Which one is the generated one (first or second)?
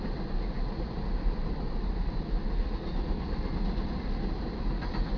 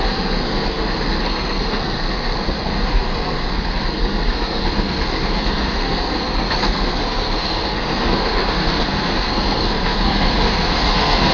second